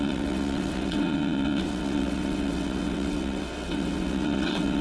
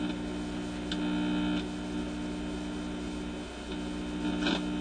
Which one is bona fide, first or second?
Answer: second